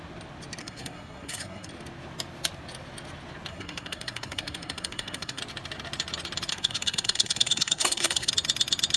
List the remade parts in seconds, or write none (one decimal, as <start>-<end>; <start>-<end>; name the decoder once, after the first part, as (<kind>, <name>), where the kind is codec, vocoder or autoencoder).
0.6-1.7 (codec, SNAC); 3.5-5.4; 6.5-8.3